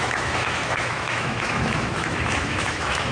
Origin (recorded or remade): remade